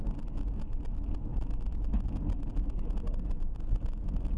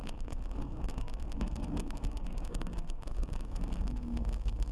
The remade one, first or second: second